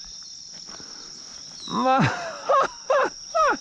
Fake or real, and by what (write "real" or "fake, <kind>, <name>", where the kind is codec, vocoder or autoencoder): real